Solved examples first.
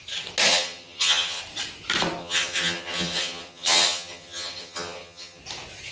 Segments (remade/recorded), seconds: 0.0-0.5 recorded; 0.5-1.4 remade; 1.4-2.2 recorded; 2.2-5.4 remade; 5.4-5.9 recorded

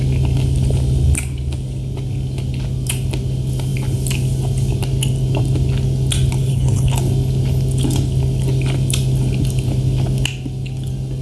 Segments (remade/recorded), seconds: 0.0-6.4 recorded; 6.4-6.9 remade; 6.9-11.2 recorded

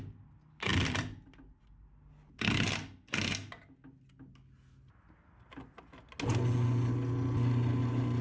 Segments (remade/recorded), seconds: 0.0-8.2 recorded